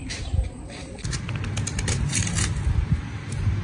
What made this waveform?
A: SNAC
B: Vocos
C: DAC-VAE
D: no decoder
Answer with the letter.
D